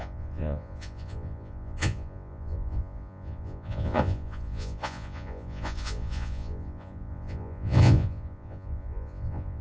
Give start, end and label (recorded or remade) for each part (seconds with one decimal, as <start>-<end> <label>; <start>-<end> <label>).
0.0-9.6 remade